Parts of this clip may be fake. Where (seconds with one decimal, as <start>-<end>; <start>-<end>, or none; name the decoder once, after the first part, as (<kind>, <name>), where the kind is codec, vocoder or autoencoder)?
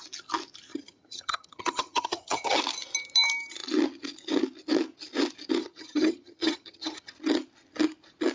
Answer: 0.7-2.6 (vocoder, HiFi-GAN); 5.6-7.1